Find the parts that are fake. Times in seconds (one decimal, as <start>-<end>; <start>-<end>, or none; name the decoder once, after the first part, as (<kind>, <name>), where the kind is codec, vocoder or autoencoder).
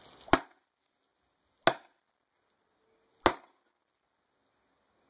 none